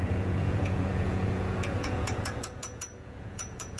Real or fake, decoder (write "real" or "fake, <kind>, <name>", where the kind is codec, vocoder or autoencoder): fake, vocoder, Vocos